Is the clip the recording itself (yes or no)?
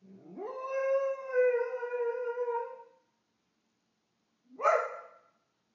yes